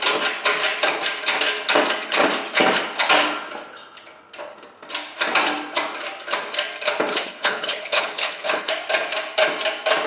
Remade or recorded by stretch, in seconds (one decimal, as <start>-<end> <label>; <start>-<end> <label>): 0.0-7.1 recorded; 7.1-8.7 remade; 8.7-10.1 recorded